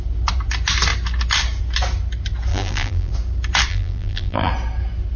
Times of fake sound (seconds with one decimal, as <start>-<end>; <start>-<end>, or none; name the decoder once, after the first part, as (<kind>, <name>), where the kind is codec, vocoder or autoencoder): 2.5-3.1 (vocoder, BigVGAN v2); 3.7-4.5